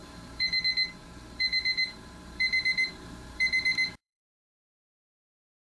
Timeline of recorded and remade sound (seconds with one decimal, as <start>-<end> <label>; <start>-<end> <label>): 0.0-0.6 remade; 0.6-1.0 recorded; 1.0-4.4 remade; 4.4-5.7 recorded